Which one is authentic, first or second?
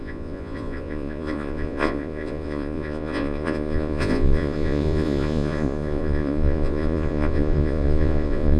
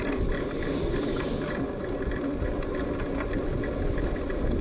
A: second